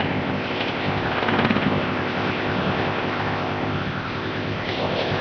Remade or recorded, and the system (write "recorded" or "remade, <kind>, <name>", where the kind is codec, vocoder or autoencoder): remade, codec, ZipCodec